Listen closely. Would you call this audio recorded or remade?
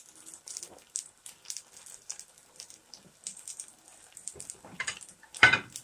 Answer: remade